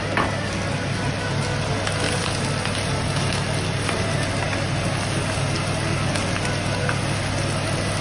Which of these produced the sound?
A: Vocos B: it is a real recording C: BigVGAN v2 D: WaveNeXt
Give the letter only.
B